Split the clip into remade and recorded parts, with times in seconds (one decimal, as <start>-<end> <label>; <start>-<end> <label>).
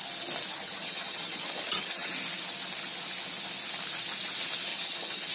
0.0-0.5 recorded; 0.5-2.1 remade; 2.1-4.7 recorded; 4.7-5.3 remade